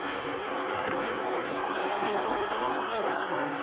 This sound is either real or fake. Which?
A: fake